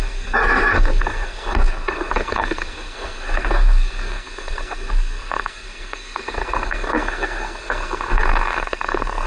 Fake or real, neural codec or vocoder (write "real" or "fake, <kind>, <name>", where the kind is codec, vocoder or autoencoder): fake, codec, SNAC